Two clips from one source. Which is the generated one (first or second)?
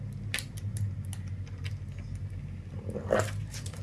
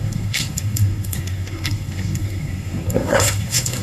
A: second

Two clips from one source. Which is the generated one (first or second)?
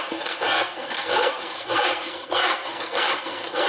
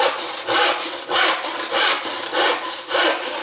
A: first